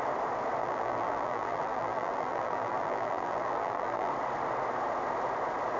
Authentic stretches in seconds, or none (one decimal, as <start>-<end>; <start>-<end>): 0.0-0.6; 4.1-5.8